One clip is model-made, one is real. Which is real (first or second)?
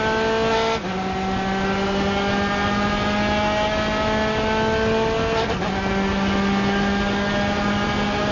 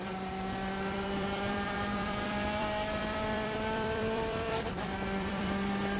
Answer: first